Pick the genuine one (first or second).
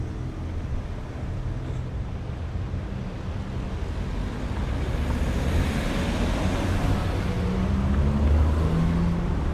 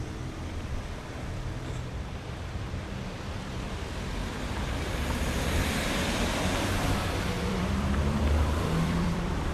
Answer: first